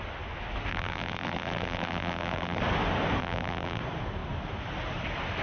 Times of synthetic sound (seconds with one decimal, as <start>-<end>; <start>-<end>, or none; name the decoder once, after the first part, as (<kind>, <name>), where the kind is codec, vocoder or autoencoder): 0.7-2.6 (vocoder, BigVGAN v2); 3.2-3.8